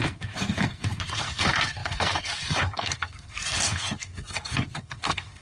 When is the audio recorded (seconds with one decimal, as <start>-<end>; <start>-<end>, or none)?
none